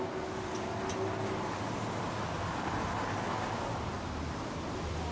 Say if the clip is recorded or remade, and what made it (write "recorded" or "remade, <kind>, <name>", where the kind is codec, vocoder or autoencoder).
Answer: recorded